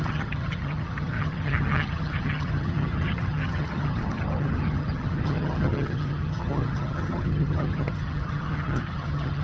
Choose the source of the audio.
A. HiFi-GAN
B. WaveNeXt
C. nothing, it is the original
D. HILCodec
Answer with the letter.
A